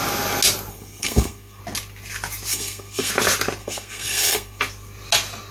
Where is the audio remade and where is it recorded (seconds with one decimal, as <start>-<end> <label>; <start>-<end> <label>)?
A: 0.0-0.7 recorded; 0.7-1.6 remade; 1.6-2.5 recorded; 2.5-3.1 remade; 3.1-3.6 recorded; 3.6-4.6 remade; 4.6-5.5 recorded